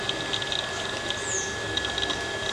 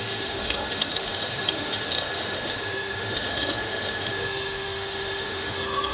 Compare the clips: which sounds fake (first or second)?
second